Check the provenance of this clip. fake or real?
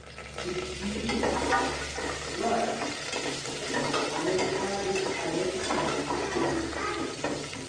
real